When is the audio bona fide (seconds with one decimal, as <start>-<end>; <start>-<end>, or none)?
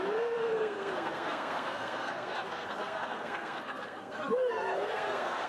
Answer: none